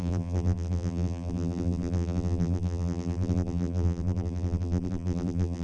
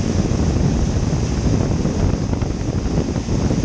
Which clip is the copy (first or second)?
first